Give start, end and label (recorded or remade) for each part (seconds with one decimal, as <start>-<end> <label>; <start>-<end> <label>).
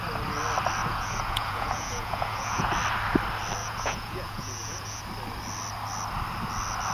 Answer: 0.0-0.8 recorded; 0.8-2.7 remade; 2.7-3.6 recorded; 3.6-5.0 remade; 5.0-6.9 recorded